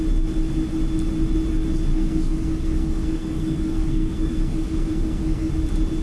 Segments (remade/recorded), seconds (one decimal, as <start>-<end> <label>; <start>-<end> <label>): 0.0-1.9 recorded; 1.9-5.5 remade; 5.5-6.0 recorded